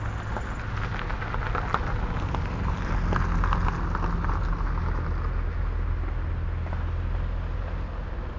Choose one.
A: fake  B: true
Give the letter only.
B